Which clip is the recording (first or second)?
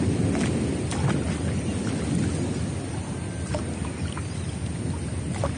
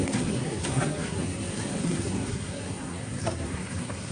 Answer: first